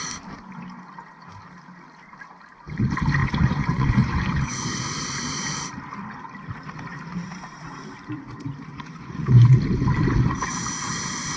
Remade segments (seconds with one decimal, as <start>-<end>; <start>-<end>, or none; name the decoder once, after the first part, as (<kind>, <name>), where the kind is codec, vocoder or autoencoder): 3.2-4.8 (vocoder, Vocos); 8.7-9.5